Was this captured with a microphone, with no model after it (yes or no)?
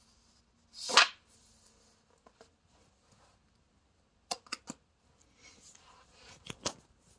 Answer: yes